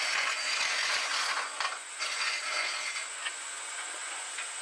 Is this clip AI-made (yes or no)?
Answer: yes